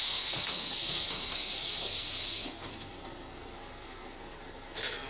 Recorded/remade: remade